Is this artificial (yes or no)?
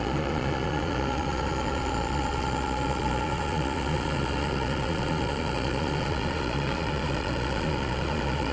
yes